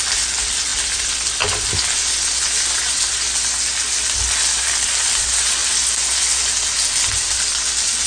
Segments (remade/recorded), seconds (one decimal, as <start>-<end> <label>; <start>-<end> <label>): 0.0-8.1 recorded

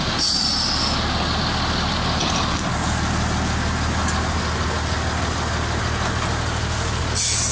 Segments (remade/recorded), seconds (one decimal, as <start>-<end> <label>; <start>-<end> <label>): 0.0-7.5 recorded